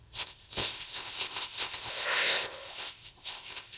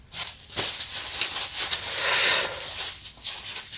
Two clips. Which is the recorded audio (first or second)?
second